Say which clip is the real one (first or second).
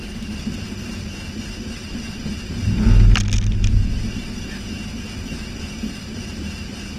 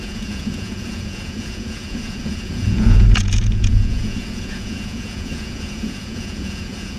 first